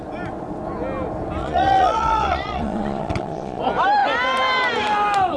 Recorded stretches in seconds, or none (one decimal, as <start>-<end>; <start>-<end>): 0.0-1.4; 3.6-5.4